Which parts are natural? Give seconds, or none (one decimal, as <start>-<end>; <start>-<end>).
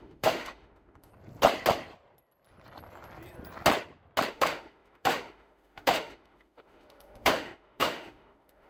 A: 1.1-4.3